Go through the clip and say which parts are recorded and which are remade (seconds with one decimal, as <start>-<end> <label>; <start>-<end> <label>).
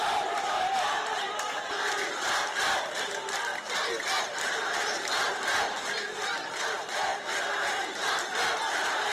0.0-3.5 remade; 3.5-4.2 recorded; 4.2-9.1 remade